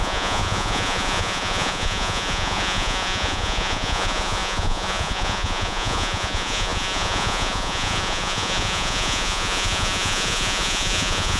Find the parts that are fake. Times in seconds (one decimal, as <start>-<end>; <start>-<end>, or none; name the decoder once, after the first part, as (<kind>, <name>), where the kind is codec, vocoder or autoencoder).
0.0-11.4 (vocoder, Vocos)